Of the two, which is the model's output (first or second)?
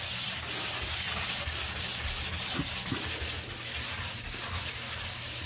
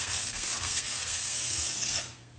second